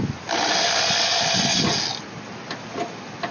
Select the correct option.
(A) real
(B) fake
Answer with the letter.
A